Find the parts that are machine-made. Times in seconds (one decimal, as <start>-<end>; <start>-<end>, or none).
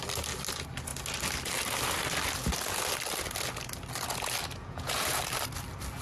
4.6-5.2